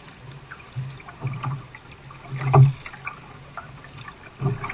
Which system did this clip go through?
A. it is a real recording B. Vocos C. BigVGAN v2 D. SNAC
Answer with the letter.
A